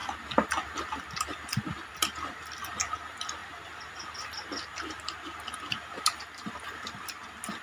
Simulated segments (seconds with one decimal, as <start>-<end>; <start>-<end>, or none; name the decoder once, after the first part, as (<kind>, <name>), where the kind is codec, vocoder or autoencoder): none